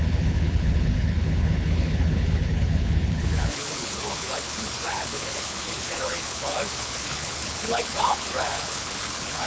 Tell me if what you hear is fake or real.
fake